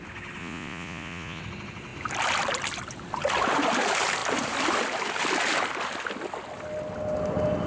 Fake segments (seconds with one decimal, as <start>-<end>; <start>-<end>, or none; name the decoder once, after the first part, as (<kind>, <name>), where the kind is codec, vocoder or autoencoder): 0.4-1.4 (vocoder, Vocos)